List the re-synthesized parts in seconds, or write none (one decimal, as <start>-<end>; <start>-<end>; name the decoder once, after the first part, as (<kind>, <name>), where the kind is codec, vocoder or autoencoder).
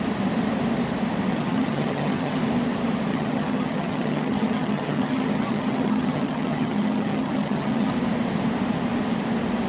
1.3-2.4 (vocoder, HiFi-GAN); 3.1-7.9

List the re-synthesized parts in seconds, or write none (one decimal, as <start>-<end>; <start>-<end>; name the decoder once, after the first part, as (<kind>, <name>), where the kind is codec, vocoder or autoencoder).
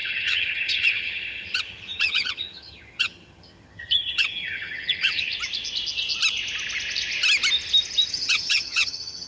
0.0-5.3 (vocoder, HiFi-GAN); 8.1-9.3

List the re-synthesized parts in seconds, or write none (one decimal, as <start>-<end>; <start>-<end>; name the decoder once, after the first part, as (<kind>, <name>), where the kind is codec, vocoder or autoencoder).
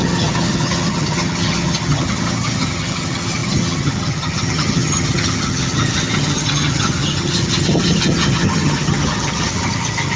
0.0-10.2 (vocoder, HiFi-GAN)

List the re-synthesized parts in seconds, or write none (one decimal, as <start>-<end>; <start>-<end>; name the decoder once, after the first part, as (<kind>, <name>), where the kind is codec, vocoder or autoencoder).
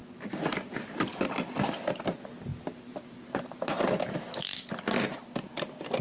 none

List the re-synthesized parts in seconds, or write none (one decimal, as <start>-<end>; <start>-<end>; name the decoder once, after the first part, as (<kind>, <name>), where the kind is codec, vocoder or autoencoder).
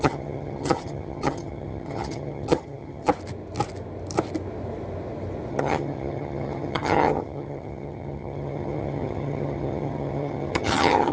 0.0-3.1 (vocoder, HiFi-GAN); 5.5-11.1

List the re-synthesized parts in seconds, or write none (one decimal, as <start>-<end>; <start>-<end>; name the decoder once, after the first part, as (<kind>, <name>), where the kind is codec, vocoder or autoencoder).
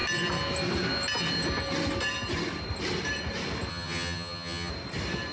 3.7-4.7 (vocoder, HiFi-GAN)